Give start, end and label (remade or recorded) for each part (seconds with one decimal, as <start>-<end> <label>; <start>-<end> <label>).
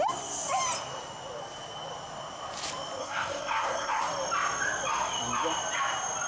0.0-3.0 recorded; 3.0-4.0 remade; 4.0-6.3 recorded